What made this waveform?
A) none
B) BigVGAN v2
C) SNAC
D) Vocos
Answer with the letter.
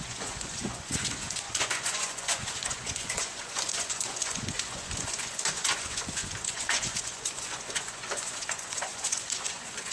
D